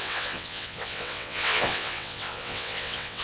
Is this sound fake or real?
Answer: fake